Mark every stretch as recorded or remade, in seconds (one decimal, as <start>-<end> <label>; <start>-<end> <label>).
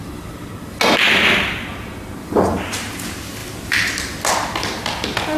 0.0-5.4 recorded